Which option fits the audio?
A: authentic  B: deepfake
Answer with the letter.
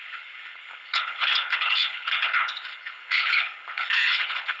B